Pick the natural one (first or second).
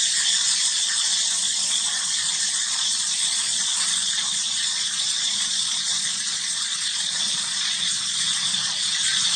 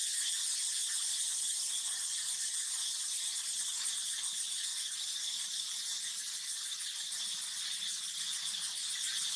second